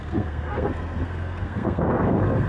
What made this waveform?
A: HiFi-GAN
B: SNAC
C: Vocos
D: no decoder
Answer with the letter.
B